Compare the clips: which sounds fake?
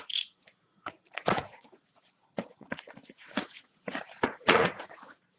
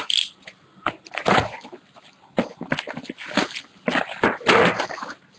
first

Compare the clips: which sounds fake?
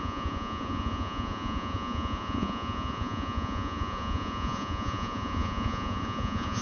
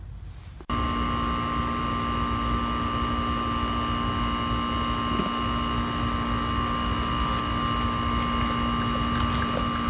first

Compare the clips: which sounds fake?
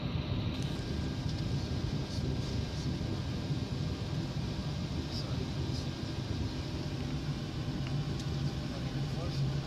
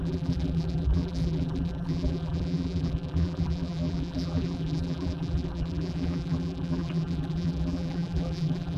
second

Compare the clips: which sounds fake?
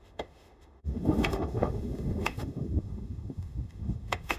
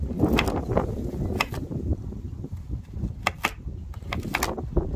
first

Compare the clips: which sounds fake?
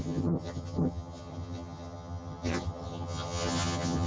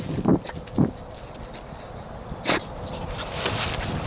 first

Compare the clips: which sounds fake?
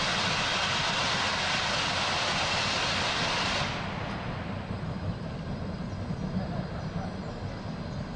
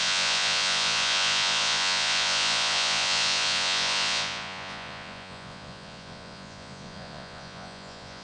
second